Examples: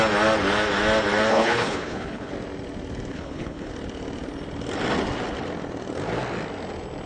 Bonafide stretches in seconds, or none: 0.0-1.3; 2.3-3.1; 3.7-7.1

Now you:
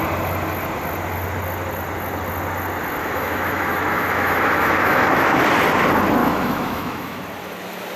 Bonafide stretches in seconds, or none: 0.0-3.0; 5.4-6.2; 7.2-8.0

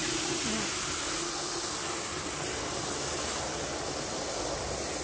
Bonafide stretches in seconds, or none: 0.0-5.0

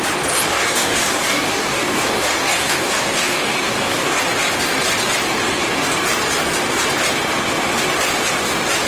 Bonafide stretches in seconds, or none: 0.0-0.5; 4.2-8.9

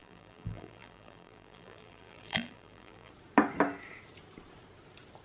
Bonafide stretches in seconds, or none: 3.1-5.2

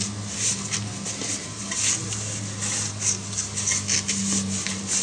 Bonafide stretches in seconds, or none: 0.0-5.0